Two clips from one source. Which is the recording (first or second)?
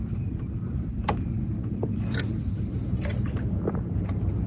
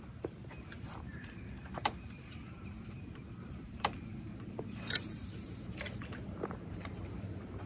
first